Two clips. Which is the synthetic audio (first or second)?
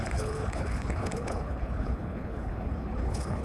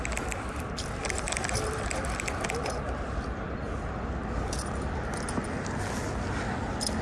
first